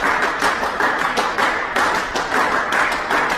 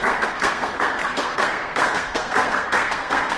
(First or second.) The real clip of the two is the first